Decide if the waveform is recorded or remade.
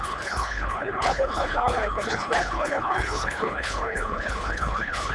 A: remade